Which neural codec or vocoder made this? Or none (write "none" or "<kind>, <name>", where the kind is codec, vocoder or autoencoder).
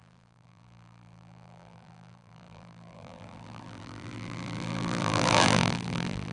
vocoder, BigVGAN v2